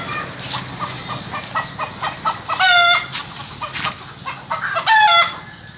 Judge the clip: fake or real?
real